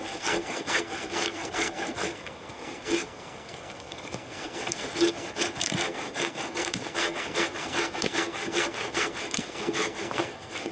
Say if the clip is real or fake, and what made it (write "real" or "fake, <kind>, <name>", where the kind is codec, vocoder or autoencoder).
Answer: fake, codec, SNAC